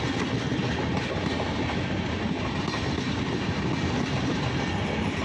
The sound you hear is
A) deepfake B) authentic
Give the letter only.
B